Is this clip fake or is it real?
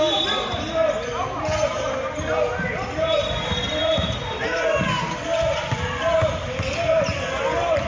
real